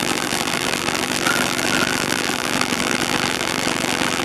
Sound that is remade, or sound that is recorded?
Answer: remade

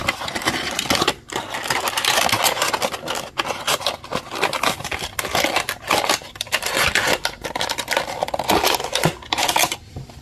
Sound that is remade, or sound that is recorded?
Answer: recorded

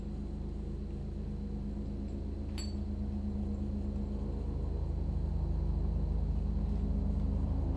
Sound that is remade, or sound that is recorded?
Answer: recorded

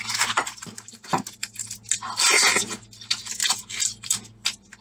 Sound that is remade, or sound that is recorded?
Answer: recorded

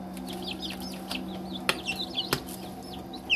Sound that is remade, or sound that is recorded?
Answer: recorded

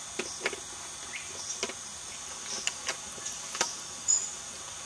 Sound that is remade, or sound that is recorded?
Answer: recorded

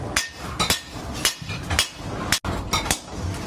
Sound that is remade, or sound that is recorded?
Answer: recorded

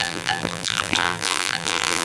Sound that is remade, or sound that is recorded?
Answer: remade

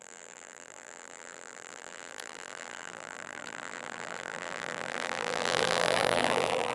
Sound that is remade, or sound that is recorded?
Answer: remade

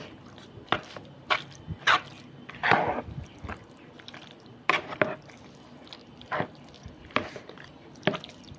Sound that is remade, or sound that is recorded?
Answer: remade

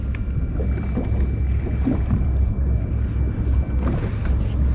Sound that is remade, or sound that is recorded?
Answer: recorded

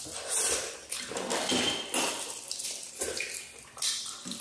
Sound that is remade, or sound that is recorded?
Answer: remade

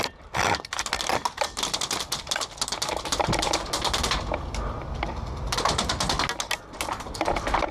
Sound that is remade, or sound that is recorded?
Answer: recorded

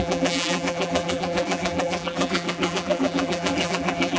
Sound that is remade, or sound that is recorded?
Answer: remade